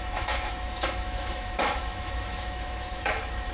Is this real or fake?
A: fake